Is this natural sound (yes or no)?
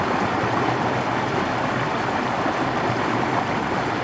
yes